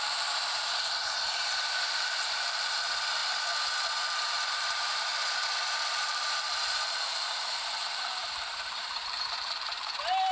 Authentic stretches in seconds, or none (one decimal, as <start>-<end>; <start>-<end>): 3.2-4.0